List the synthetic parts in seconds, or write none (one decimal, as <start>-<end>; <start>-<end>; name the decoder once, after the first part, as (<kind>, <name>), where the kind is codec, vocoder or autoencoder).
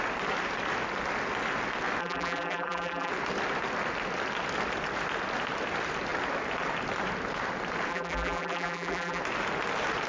2.0-3.1 (vocoder, BigVGAN v2); 7.9-9.2